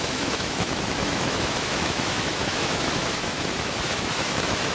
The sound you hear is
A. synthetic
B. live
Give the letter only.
A